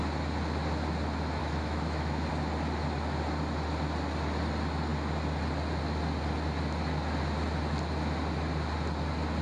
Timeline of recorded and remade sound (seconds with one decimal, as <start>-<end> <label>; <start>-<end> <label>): 0.0-1.4 recorded; 1.4-2.3 remade; 2.3-9.4 recorded